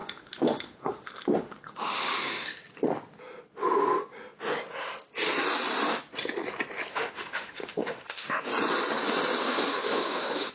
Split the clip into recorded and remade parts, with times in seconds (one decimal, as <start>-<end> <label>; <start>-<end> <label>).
0.0-2.6 remade; 2.6-6.9 recorded; 6.9-8.5 remade; 8.5-9.4 recorded; 9.4-10.5 remade